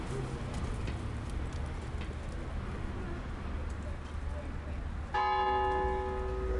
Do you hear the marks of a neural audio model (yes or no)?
no